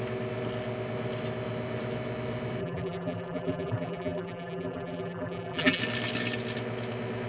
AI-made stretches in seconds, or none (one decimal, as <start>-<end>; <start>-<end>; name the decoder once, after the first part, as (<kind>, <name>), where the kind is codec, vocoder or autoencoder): 2.6-5.8 (vocoder, BigVGAN v2)